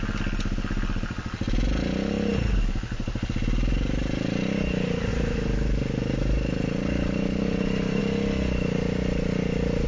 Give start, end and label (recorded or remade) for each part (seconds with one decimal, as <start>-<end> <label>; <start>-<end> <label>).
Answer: 0.0-5.1 recorded; 5.1-8.0 remade; 8.0-9.9 recorded